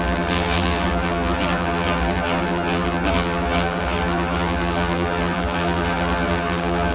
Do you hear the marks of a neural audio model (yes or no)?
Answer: yes